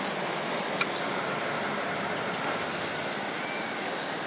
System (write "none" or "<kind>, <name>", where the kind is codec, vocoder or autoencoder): none